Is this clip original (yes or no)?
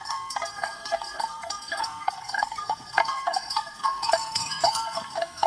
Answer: no